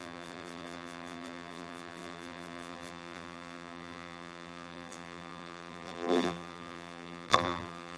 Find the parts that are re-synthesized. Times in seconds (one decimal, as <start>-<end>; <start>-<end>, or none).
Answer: 0.0-8.0